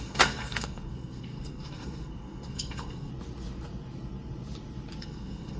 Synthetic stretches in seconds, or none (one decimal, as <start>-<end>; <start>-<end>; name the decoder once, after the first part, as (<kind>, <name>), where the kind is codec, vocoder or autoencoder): 0.0-3.1 (codec, SNAC); 5.0-5.6